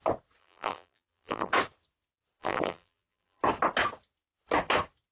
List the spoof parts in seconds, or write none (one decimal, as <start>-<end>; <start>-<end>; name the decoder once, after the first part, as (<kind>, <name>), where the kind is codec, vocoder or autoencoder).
0.4-1.5 (vocoder, BigVGAN v2); 2.4-3.4